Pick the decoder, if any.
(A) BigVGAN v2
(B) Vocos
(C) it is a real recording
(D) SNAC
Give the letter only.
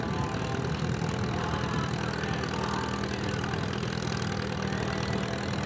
C